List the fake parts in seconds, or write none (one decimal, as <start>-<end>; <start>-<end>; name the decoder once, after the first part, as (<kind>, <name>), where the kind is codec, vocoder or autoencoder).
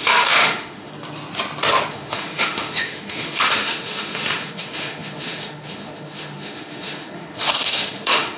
0.0-0.9 (autoencoder, DAC-VAE); 1.9-8.4